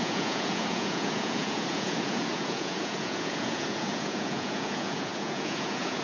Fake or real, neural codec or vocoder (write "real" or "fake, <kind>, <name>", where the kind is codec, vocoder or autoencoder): fake, vocoder, Vocos